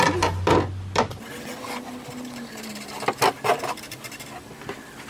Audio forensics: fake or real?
real